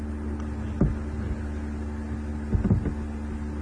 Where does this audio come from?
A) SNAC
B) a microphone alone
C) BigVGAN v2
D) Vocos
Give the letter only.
B